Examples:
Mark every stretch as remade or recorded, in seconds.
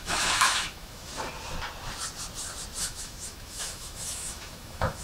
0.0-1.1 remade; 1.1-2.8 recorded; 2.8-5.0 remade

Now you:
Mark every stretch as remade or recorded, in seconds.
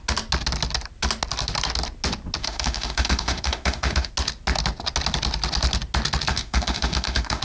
0.0-2.4 recorded; 2.4-4.1 remade; 4.1-6.3 recorded; 6.3-7.4 remade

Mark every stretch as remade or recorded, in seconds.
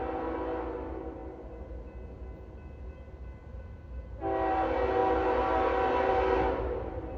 0.0-7.2 recorded